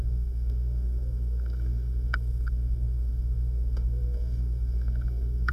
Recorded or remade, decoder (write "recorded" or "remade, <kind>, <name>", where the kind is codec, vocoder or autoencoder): remade, codec, SNAC